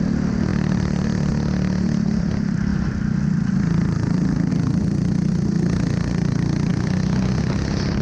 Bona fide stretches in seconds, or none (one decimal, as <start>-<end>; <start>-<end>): 0.0-2.7; 4.5-8.0